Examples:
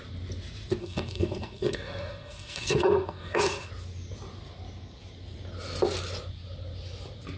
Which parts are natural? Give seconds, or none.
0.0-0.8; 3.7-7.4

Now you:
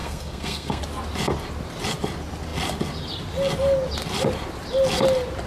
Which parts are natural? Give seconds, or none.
0.8-5.5

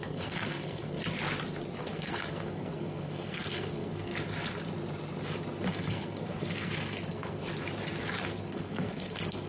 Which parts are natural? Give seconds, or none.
1.0-1.8; 4.1-5.7; 7.4-8.2

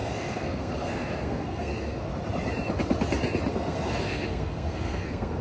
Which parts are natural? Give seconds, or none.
2.1-3.5